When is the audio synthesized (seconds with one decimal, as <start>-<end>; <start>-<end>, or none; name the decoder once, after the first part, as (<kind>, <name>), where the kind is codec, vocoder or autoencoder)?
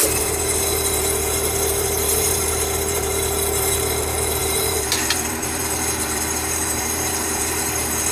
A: 0.0-8.1 (vocoder, BigVGAN v2)